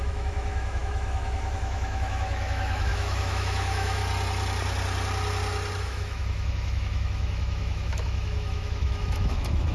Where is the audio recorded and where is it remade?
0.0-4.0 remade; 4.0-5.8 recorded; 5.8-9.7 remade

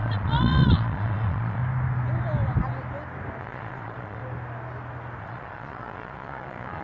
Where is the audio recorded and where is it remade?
0.0-1.6 remade; 1.6-3.4 recorded; 3.4-4.2 remade; 4.2-5.2 recorded; 5.2-6.8 remade

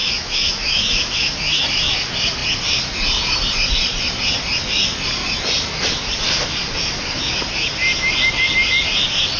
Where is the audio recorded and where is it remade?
0.0-1.6 remade; 1.6-9.4 recorded

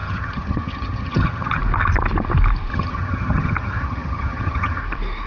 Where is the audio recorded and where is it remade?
0.0-1.6 remade; 1.6-2.7 recorded; 2.7-4.8 remade; 4.8-5.3 recorded

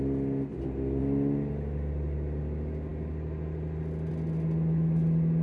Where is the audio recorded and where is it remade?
0.0-5.4 recorded

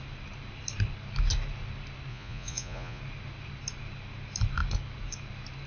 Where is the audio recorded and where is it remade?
0.0-2.1 recorded; 2.1-3.0 remade; 3.0-5.7 recorded

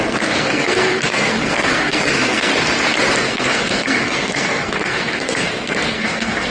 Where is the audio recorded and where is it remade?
0.0-2.5 remade; 2.5-3.1 recorded; 3.1-6.5 remade